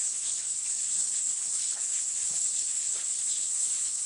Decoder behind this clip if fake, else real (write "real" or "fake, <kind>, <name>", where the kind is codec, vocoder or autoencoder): fake, codec, HILCodec